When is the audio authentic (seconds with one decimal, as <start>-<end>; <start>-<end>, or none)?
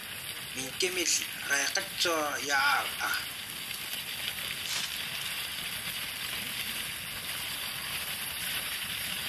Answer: 0.0-2.6; 3.2-8.0